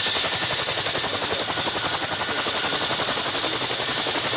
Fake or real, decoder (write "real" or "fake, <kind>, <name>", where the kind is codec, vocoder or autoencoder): real